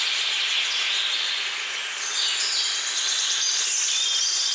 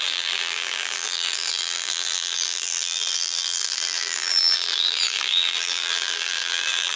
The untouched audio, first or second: first